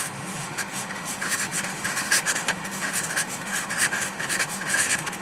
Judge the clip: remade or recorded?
remade